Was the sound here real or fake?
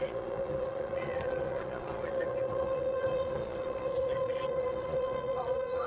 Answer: fake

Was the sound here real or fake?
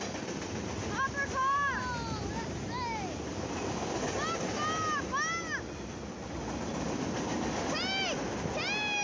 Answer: real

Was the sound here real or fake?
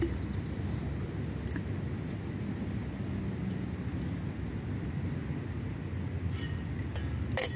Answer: real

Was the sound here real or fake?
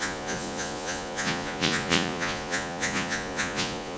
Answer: fake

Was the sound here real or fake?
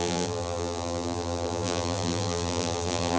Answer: fake